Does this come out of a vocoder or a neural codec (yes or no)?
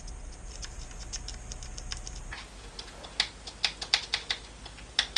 no